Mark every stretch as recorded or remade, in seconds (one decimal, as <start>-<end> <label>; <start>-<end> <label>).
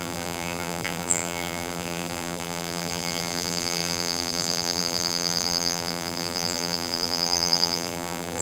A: 0.0-8.4 remade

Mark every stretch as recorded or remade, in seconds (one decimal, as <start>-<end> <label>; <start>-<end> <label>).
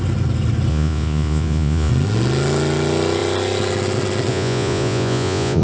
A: 0.0-0.7 recorded; 0.7-1.9 remade; 1.9-4.3 recorded; 4.3-5.6 remade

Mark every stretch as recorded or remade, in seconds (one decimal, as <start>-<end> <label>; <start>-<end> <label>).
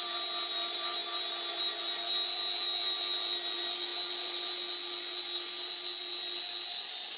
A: 0.0-7.2 recorded